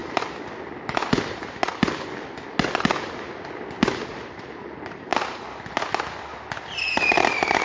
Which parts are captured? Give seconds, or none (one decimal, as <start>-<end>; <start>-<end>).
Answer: 0.0-4.1; 5.1-6.8